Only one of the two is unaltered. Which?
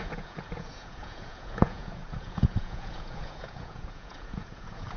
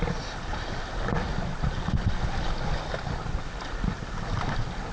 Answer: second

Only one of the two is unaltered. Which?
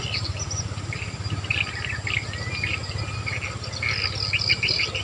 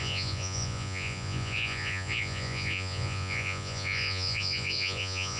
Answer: first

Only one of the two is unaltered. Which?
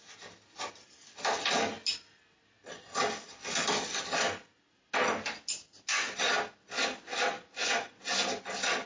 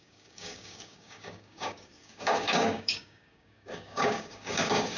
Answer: first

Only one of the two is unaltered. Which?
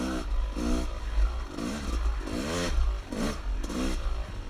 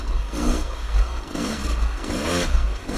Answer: first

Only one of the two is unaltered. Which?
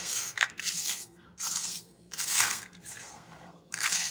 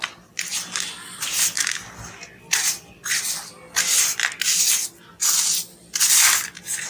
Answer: second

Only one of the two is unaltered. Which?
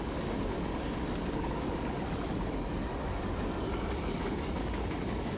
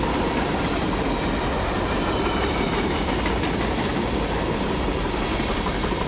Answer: second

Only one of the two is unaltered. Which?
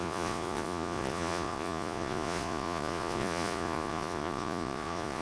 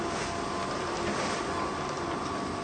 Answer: second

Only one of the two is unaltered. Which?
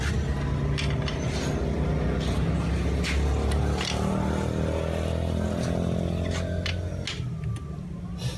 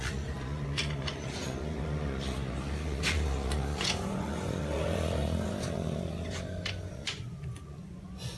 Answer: first